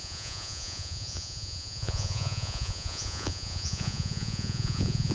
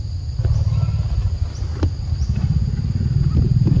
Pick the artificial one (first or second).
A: first